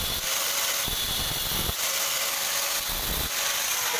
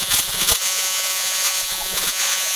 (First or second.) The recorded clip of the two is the first